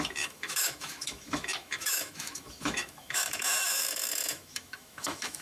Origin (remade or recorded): remade